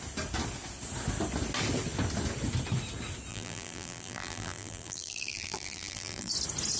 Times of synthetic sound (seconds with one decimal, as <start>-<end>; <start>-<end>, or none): 3.3-6.3